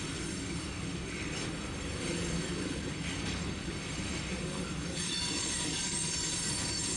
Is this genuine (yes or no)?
no